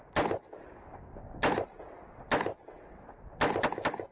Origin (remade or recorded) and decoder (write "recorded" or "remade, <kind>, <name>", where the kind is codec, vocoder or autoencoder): recorded